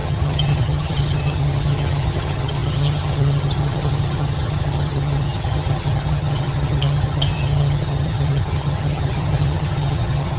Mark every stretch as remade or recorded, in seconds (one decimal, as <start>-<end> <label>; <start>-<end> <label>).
0.0-10.4 remade